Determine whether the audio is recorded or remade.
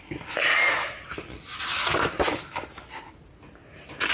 recorded